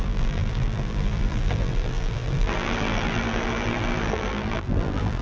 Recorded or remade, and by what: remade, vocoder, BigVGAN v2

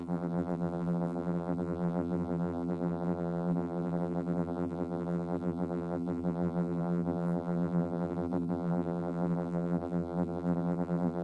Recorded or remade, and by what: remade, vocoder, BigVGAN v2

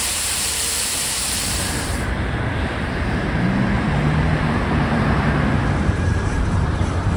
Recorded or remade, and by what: remade, vocoder, BigVGAN v2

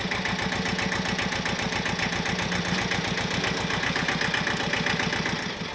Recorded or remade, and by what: recorded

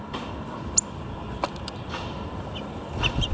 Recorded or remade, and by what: recorded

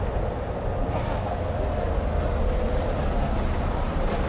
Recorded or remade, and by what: recorded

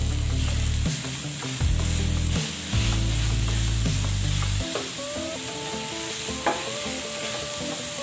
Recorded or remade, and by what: recorded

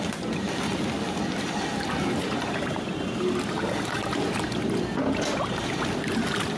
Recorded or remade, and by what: recorded